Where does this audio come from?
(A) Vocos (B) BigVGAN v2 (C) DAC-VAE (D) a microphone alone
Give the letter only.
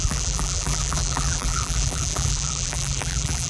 B